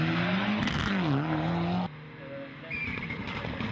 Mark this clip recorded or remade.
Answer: recorded